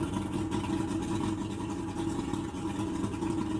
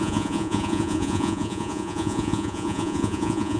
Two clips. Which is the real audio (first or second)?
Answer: first